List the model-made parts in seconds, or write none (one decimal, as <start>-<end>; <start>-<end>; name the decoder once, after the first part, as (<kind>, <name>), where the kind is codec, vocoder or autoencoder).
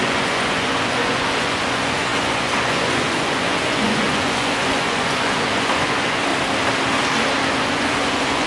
0.0-6.3 (vocoder, Vocos); 7.5-8.5